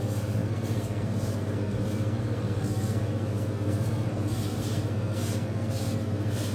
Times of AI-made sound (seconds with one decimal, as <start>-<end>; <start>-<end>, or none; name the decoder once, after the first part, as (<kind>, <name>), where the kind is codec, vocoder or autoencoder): 0.0-6.5 (codec, SNAC)